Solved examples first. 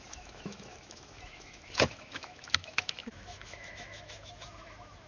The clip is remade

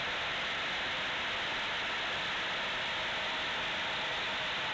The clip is recorded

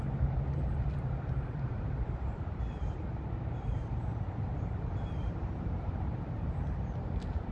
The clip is remade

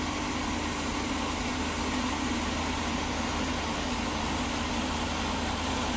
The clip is recorded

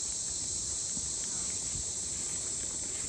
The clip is remade